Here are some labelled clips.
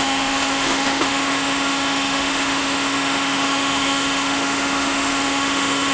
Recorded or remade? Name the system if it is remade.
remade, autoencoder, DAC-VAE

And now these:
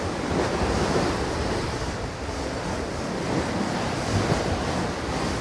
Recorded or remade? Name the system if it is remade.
recorded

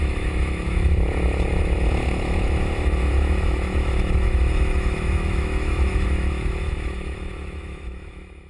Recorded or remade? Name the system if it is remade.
remade, autoencoder, DAC-VAE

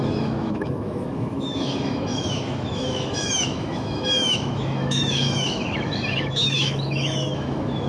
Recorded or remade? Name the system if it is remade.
remade, autoencoder, DAC-VAE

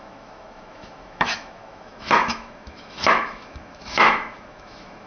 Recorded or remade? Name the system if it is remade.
remade, autoencoder, DAC-VAE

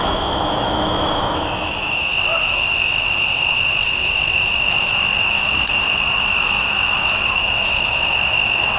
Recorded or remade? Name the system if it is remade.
remade, autoencoder, DAC-VAE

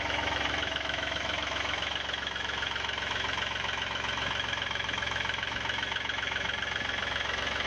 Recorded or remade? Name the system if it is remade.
remade, autoencoder, DAC-VAE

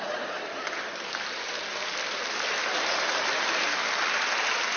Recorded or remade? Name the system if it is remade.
recorded